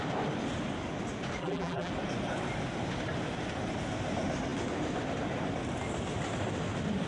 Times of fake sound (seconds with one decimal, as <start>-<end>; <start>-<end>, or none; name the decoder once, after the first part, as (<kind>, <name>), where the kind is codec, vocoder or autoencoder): 1.4-1.9 (vocoder, BigVGAN v2)

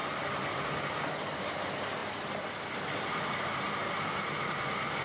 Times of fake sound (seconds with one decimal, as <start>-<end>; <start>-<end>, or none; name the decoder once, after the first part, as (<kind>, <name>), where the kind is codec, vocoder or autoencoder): 0.0-0.7 (vocoder, BigVGAN v2); 2.0-5.0

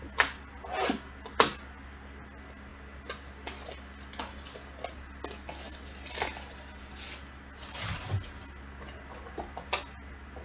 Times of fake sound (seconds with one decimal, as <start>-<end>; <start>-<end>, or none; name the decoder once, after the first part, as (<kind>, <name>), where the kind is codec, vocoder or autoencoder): none

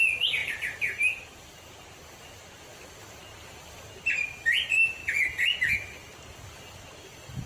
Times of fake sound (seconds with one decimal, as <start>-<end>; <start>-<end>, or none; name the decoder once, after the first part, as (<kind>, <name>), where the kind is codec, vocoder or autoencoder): 0.4-1.9 (vocoder, BigVGAN v2)

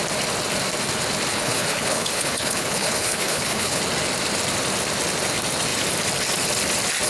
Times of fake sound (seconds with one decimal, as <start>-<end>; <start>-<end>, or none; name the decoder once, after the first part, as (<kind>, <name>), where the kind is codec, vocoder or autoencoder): 1.3-3.8 (codec, HILCodec)

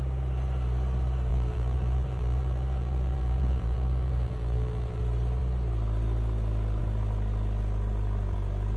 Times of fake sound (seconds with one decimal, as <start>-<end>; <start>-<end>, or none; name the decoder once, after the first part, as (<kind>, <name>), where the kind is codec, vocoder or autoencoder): 1.3-5.0 (vocoder, BigVGAN v2)

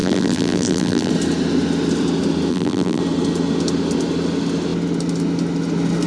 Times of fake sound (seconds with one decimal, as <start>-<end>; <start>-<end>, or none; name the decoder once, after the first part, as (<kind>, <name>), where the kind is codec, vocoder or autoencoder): 0.0-1.1 (vocoder, BigVGAN v2); 2.5-3.0

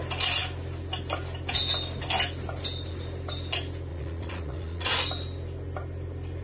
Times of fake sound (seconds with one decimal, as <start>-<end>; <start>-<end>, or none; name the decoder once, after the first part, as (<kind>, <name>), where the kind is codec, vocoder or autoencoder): 3.9-4.9 (vocoder, Vocos)